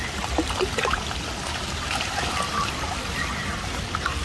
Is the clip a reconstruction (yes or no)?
no